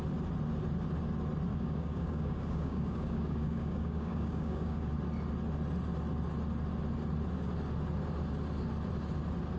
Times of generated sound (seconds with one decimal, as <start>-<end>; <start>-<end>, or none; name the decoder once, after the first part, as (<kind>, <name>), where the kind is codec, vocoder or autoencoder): 1.5-4.9 (codec, DAC)